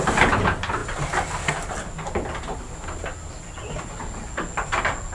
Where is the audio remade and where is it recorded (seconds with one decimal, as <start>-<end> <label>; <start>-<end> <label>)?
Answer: 0.0-5.1 recorded